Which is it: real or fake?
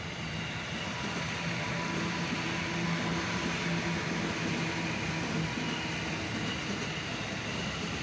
real